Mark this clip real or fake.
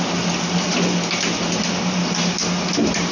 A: real